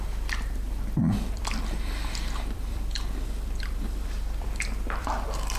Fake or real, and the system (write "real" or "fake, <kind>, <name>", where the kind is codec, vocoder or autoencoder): fake, vocoder, BigVGAN v2